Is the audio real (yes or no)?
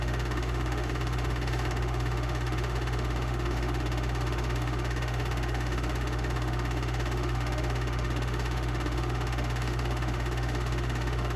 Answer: no